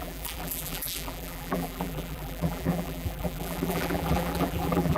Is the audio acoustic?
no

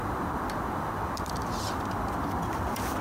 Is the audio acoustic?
no